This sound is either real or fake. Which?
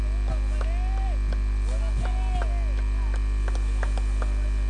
real